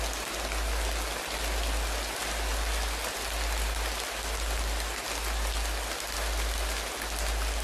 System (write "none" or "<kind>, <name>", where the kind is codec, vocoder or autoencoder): none